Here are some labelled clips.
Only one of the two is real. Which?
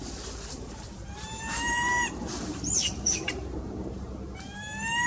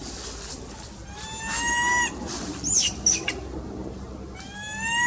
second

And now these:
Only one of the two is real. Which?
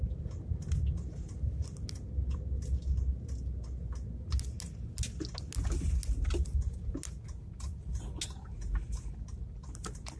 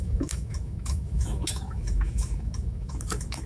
first